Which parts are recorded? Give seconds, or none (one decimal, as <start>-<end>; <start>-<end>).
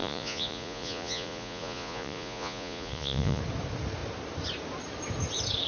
3.4-5.7